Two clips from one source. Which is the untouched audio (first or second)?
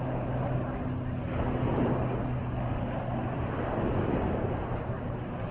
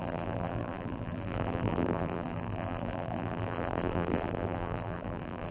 first